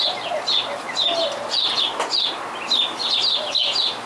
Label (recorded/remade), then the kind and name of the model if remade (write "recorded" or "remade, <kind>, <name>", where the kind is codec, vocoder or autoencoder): recorded